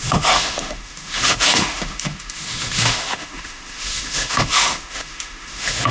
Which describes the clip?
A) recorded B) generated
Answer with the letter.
B